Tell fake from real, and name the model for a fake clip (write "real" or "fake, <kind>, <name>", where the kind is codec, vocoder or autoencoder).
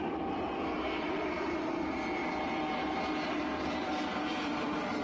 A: fake, vocoder, BigVGAN v2